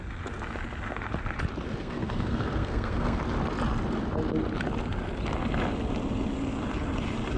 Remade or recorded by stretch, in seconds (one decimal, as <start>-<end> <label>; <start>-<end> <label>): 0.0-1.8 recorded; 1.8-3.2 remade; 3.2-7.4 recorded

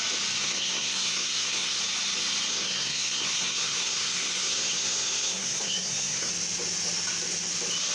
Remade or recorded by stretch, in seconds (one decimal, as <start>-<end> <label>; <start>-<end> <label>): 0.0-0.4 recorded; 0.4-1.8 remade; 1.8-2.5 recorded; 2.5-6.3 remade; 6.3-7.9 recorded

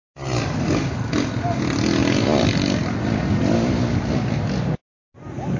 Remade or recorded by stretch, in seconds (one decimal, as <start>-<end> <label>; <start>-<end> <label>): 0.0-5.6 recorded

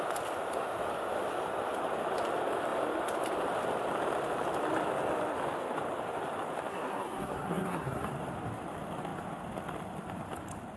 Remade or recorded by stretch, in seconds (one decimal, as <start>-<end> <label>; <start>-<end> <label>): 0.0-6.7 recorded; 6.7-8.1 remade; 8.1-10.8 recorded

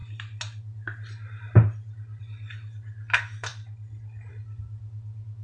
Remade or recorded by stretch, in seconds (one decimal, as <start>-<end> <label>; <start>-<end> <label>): 0.0-5.4 recorded

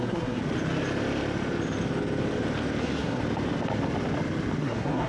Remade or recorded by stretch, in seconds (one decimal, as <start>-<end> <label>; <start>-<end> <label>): 0.0-0.4 remade; 0.4-2.8 recorded; 2.8-3.2 remade; 3.2-4.6 recorded; 4.6-5.1 remade

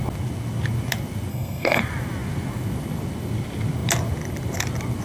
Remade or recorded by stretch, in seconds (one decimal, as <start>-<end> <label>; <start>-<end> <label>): 0.0-1.3 recorded; 1.3-1.8 remade; 1.8-5.0 recorded

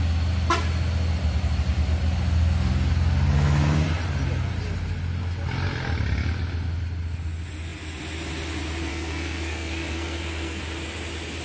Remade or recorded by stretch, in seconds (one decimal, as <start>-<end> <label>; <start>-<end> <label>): 0.0-8.9 recorded; 8.9-10.6 remade; 10.6-11.4 recorded